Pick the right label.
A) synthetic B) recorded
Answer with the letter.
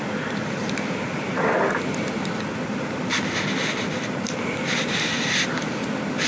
B